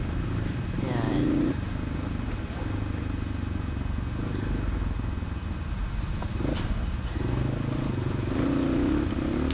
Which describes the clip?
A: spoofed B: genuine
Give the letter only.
B